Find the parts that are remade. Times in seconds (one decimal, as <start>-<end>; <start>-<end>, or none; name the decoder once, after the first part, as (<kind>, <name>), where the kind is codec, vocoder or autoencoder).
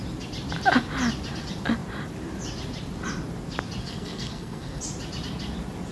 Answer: 3.8-4.8 (codec, SNAC)